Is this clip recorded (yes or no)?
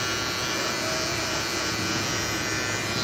yes